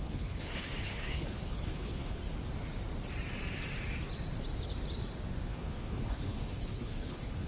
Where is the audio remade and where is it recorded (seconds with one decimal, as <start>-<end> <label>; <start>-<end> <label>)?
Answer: 0.0-2.2 remade; 2.2-5.5 recorded; 5.5-7.5 remade